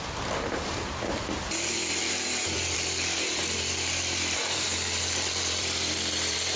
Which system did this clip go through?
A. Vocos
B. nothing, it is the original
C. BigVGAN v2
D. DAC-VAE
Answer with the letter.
C